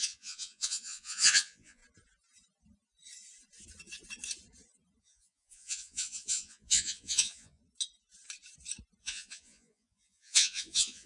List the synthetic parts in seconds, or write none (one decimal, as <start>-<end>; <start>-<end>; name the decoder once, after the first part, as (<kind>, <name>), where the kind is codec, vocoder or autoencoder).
0.0-1.8 (vocoder, Vocos); 5.0-7.6; 9.0-11.1